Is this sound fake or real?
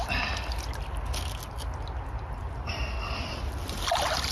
real